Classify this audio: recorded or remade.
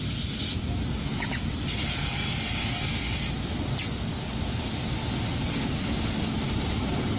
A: recorded